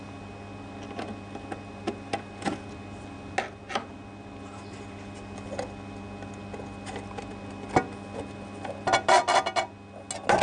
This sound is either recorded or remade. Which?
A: recorded